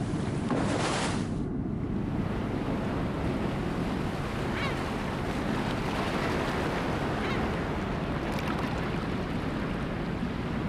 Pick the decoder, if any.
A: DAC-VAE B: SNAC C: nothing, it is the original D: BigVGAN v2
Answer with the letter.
C